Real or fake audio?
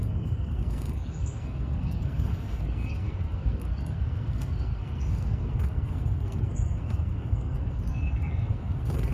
fake